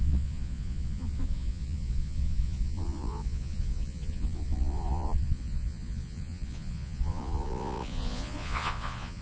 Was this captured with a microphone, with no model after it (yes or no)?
no